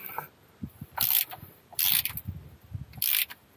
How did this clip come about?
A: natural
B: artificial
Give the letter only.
A